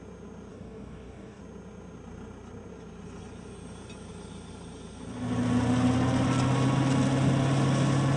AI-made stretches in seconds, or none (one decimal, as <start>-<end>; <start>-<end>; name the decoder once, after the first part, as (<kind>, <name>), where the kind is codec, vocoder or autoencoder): 0.5-1.4 (codec, DAC)